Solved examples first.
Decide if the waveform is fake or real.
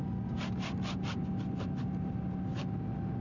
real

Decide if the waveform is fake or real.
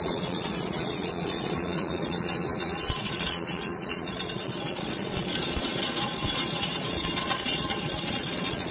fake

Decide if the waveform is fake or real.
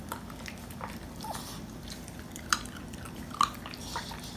real